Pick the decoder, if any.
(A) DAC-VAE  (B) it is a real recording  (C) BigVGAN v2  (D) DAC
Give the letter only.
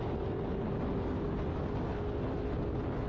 B